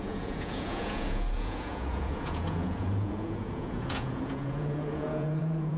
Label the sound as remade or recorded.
remade